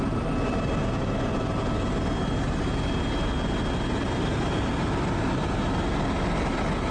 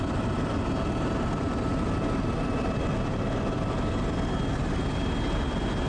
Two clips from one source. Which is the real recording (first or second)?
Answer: first